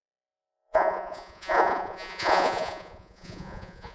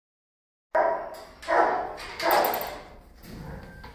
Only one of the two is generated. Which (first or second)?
first